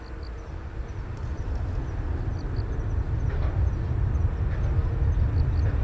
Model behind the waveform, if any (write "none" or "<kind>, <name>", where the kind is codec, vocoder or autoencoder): none